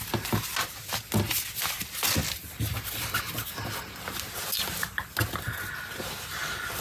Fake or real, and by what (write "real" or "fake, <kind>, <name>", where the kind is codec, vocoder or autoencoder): real